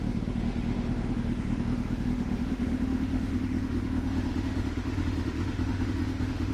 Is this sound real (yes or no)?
no